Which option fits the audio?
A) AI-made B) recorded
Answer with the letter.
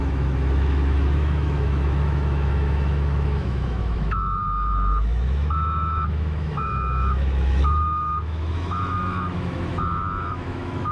A